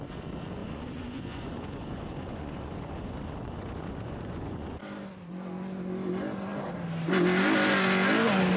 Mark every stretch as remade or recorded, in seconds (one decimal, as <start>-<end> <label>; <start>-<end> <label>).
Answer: 0.0-0.6 recorded; 0.6-4.8 remade; 4.8-8.6 recorded